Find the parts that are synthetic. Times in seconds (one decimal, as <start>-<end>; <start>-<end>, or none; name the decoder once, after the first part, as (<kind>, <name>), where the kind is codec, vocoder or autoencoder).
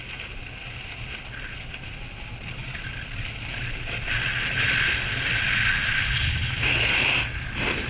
none